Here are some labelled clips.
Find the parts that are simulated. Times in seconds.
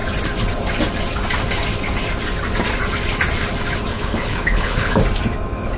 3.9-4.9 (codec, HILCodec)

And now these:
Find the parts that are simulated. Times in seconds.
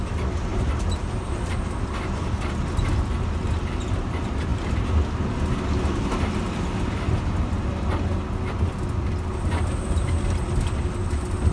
0.5-1.5 (vocoder, BigVGAN v2)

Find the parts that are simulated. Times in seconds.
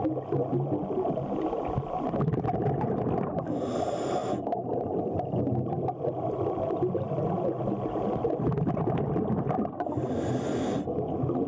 none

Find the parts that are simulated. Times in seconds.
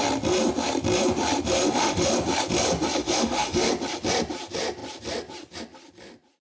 1.6-2.1 (autoencoder, DAC-VAE); 3.0-3.7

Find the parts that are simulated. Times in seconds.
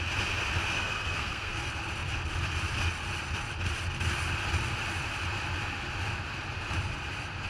0.6-1.6 (codec, SNAC)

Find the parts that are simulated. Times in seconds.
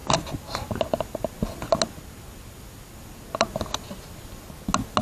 none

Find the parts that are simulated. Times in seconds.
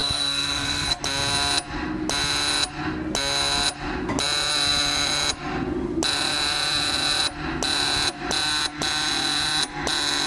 0.0-1.0 (codec, SNAC)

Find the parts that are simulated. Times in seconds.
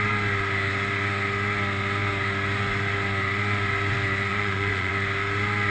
4.3-4.9 (vocoder, Vocos)